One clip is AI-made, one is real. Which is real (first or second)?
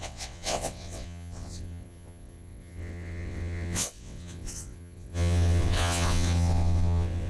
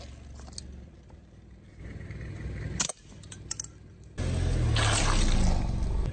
second